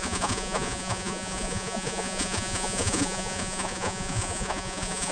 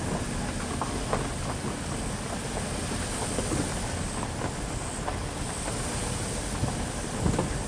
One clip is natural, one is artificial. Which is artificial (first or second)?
first